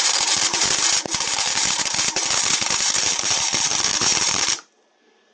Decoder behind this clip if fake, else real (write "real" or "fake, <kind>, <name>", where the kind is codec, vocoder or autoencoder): fake, vocoder, BigVGAN v2